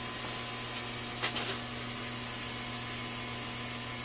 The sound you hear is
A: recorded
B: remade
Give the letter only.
A